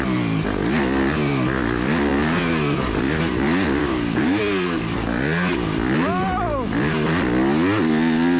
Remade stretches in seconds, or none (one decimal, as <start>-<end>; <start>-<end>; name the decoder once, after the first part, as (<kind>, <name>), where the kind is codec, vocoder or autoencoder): 3.8-4.4 (codec, DAC)